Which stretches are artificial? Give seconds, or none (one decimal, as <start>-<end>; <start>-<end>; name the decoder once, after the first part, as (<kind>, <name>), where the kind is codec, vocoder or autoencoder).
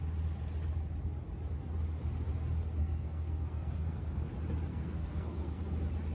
2.8-4.3 (codec, SNAC); 4.7-5.6